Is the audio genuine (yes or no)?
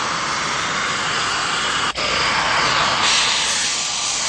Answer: yes